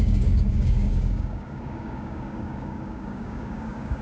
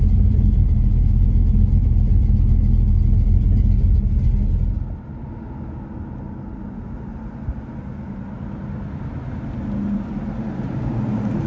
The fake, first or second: first